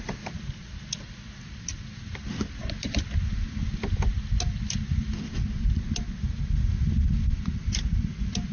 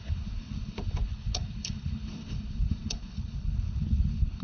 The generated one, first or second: second